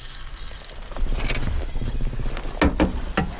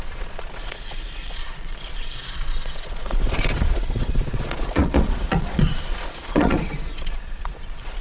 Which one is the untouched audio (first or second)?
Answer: first